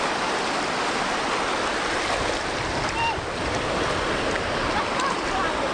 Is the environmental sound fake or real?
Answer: real